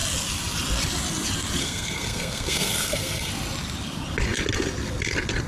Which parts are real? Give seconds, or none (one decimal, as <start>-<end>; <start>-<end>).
0.0-1.6; 3.3-5.5